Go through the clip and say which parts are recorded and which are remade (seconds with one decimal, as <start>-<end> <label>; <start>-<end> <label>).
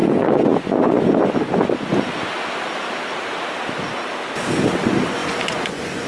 0.0-1.0 remade; 1.0-5.2 recorded; 5.2-6.1 remade